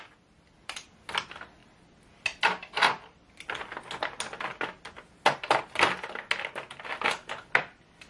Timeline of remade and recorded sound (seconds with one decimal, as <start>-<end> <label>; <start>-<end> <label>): 0.0-8.1 recorded